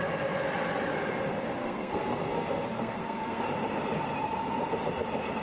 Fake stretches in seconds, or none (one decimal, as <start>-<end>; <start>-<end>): 1.6-3.4